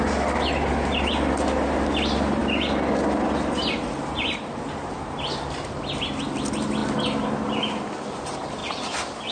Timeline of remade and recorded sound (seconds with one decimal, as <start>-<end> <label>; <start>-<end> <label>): 0.0-9.3 recorded